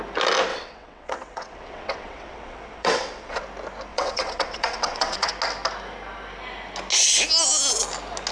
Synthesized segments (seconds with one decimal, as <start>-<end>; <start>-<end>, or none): 0.5-3.4; 3.9-5.3